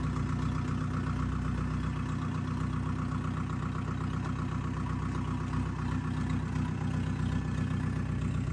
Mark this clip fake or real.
real